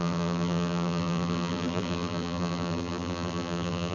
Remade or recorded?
remade